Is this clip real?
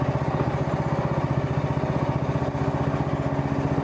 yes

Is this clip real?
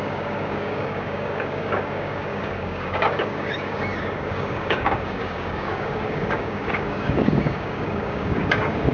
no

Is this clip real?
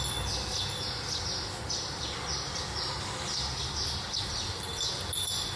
yes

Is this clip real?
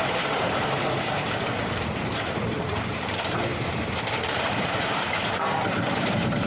no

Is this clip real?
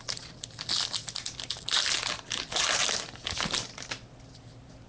yes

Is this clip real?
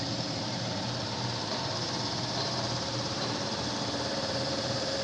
no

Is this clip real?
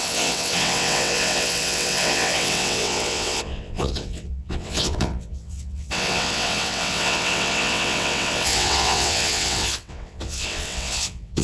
no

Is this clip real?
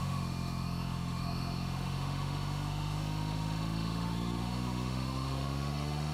no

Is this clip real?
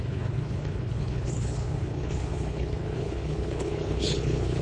no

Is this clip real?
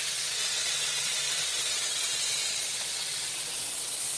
no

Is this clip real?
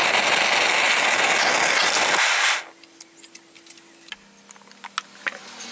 yes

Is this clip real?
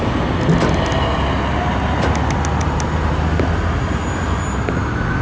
yes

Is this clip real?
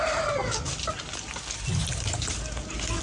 yes